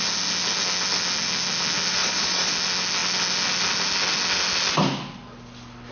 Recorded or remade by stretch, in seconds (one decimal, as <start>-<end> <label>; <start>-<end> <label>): 0.0-2.0 recorded; 2.0-2.5 remade; 2.5-5.9 recorded